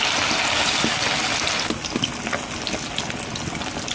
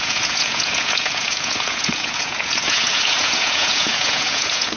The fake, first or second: second